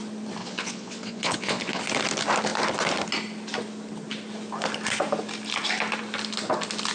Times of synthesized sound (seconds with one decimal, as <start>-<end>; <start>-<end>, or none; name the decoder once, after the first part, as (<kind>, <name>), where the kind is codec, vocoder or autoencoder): 0.4-1.8 (vocoder, Vocos)